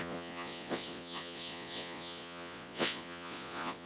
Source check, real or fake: fake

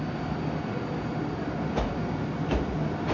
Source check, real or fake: real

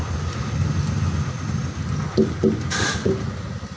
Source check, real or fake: real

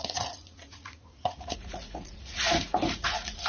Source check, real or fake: fake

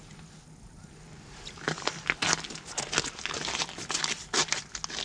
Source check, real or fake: real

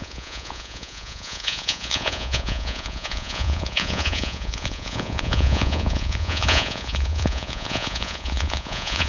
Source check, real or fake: fake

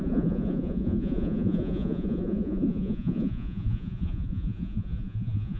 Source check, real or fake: fake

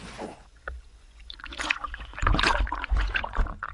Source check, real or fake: fake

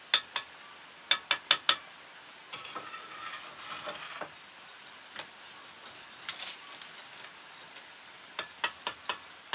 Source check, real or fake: real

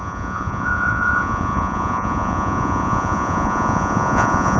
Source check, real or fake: fake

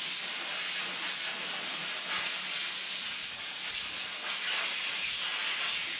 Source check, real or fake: real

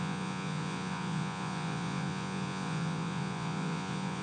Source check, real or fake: fake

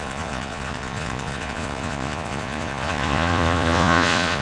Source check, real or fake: fake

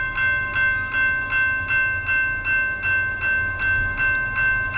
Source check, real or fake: real